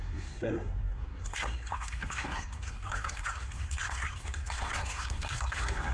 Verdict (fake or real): fake